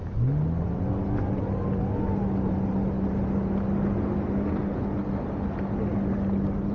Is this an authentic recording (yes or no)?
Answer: yes